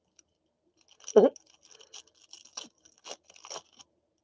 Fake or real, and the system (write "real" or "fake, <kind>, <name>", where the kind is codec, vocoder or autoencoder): real